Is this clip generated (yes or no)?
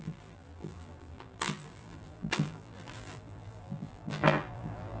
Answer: yes